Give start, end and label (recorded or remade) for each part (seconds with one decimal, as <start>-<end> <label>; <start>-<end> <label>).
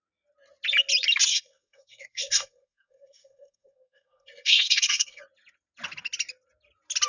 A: 0.0-1.3 recorded; 1.3-5.2 remade; 5.2-7.1 recorded